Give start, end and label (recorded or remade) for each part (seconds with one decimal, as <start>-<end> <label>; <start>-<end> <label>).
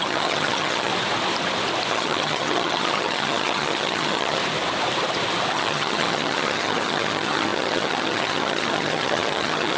0.0-0.9 remade; 0.9-1.9 recorded; 1.9-4.4 remade; 4.4-5.5 recorded; 5.5-9.8 remade